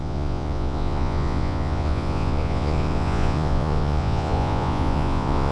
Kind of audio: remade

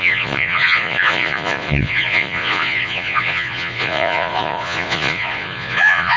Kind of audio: remade